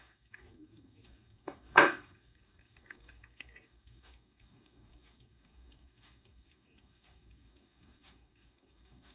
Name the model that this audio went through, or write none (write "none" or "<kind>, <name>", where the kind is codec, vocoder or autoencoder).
codec, DAC